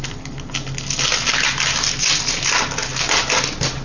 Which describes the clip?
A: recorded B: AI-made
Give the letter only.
A